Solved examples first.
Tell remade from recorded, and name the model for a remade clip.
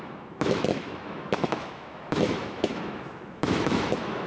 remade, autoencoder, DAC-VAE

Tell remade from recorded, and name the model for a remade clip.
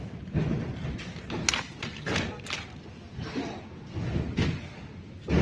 recorded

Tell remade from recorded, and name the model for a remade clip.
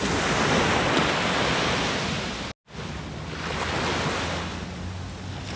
recorded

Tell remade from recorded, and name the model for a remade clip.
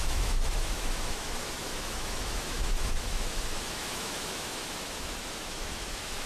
remade, autoencoder, DAC-VAE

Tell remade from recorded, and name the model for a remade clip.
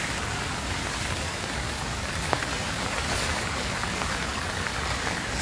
remade, codec, DAC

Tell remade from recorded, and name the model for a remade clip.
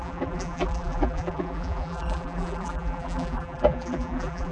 remade, vocoder, BigVGAN v2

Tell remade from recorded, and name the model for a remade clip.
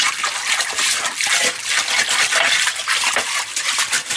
recorded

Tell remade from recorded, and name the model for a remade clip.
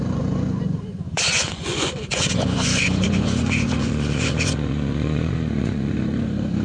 remade, vocoder, Vocos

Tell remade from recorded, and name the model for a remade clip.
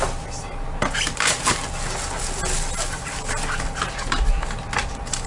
recorded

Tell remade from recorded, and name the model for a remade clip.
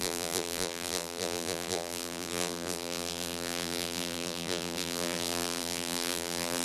remade, vocoder, BigVGAN v2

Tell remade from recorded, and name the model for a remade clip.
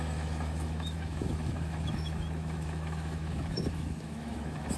remade, autoencoder, DAC-VAE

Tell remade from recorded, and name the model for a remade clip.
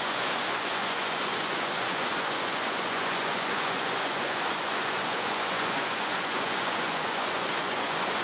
remade, vocoder, Vocos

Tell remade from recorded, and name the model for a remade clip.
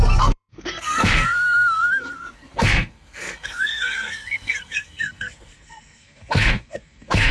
remade, codec, SNAC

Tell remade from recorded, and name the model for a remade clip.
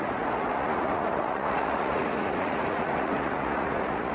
remade, vocoder, Vocos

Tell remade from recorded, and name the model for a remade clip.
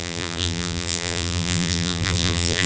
remade, vocoder, BigVGAN v2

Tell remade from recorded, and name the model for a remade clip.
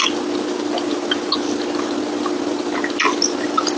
recorded